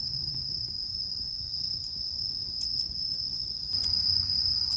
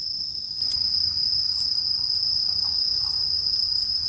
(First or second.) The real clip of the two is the second